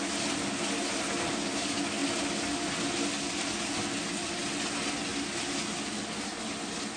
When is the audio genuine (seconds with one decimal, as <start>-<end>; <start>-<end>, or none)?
0.0-7.0